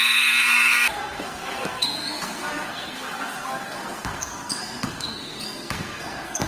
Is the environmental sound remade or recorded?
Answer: remade